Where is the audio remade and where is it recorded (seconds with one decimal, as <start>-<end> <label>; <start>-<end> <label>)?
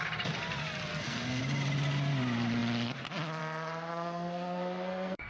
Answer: 0.0-0.9 recorded; 0.9-1.4 remade; 1.4-3.9 recorded; 3.9-5.3 remade